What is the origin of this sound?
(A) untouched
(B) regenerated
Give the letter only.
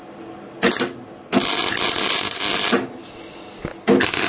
A